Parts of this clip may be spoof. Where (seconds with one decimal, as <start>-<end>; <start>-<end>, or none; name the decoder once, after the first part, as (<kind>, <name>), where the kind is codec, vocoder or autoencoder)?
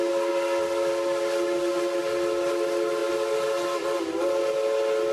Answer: none